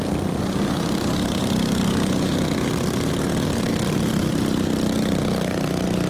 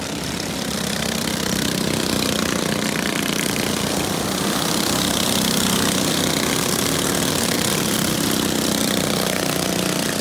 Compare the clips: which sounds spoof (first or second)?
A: second